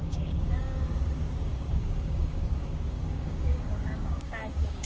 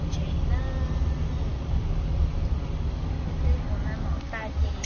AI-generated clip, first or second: first